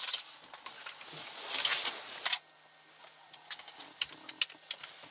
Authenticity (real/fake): real